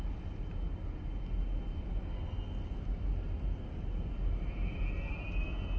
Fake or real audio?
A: real